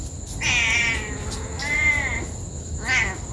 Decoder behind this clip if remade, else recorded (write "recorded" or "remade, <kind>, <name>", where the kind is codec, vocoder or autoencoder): recorded